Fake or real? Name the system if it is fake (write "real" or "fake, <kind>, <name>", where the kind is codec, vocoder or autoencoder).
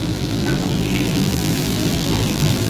fake, vocoder, BigVGAN v2